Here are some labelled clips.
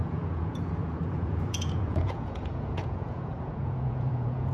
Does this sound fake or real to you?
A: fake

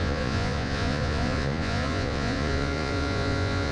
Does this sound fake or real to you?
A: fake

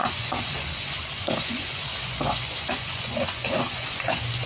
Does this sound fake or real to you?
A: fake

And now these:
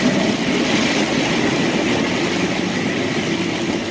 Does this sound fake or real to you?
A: real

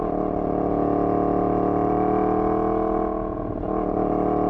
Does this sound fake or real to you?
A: real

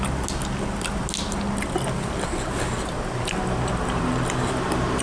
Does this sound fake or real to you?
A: real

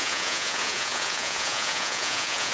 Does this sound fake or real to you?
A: fake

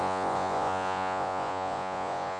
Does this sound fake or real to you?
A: fake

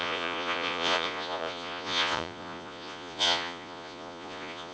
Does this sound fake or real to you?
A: fake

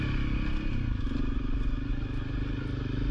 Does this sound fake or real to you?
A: real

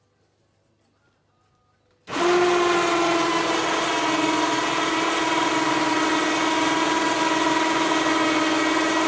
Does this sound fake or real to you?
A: real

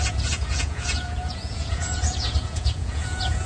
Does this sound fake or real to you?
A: fake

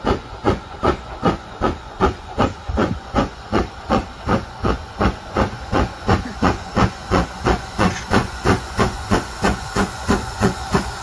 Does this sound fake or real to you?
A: fake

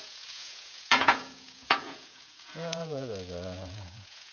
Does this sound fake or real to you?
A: fake